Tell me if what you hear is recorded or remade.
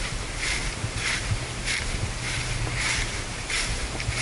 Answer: remade